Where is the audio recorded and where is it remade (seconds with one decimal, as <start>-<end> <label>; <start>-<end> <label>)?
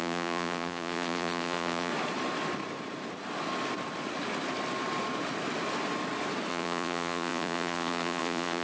0.0-1.9 remade; 1.9-6.5 recorded; 6.5-8.6 remade